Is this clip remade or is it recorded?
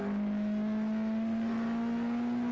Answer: recorded